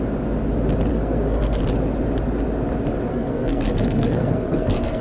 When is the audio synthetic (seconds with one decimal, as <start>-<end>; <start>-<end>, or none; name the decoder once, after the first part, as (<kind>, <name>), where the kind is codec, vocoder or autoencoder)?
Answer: 0.9-1.6 (codec, SNAC); 3.1-5.0